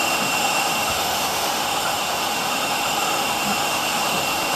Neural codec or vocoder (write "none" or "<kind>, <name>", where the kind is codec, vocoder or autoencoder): autoencoder, DAC-VAE